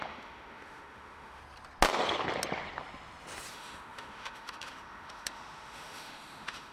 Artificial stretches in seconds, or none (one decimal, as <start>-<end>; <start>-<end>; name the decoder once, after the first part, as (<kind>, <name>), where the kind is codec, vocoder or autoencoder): 0.0-1.4 (autoencoder, DAC-VAE); 3.5-6.7